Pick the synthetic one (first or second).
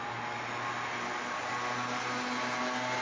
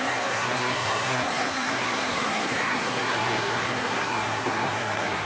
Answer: second